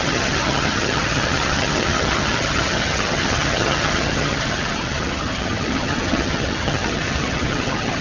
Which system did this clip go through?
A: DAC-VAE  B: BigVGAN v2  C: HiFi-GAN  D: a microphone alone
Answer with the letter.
C